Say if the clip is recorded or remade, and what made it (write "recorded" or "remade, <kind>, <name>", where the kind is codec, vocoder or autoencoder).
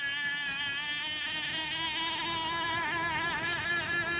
recorded